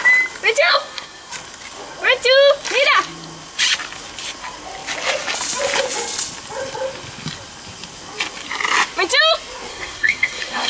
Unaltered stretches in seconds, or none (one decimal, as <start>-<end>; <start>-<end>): 0.0-0.7; 1.3-9.7